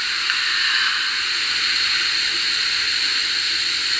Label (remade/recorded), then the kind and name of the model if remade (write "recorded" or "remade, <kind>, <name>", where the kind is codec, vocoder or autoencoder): recorded